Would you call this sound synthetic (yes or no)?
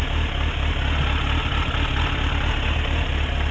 no